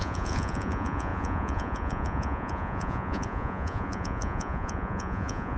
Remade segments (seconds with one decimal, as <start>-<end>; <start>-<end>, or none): 0.0-5.6

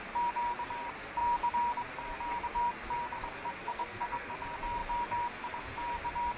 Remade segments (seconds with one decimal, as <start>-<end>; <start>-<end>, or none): 3.6-4.3

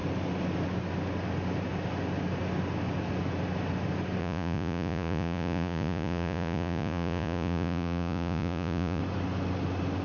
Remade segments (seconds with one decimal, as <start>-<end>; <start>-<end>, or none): 4.2-9.0

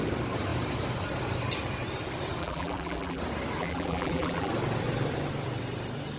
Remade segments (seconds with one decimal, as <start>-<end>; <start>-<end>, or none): 2.4-3.2; 3.6-4.5

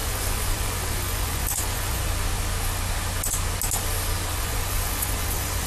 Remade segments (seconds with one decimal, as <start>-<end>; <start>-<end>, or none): 0.0-2.0; 4.3-5.7

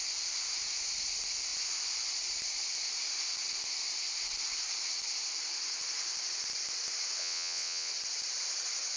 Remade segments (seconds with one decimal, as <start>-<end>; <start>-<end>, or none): 7.2-7.9

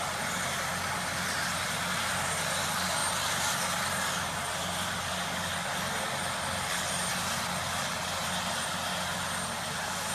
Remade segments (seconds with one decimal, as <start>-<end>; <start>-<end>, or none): 8.2-8.7